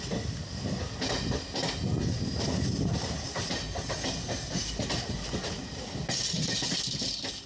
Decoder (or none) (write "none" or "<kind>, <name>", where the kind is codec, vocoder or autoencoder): none